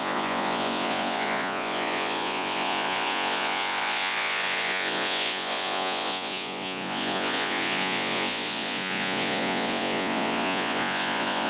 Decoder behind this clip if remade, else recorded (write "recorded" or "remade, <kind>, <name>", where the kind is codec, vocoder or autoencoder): remade, vocoder, Vocos